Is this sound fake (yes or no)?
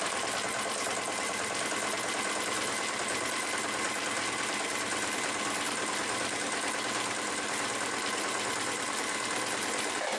no